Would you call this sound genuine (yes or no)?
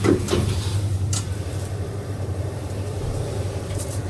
no